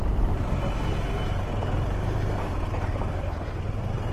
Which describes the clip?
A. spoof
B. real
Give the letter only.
B